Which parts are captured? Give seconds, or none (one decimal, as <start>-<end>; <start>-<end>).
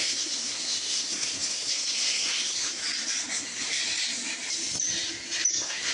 2.8-3.3; 3.8-5.5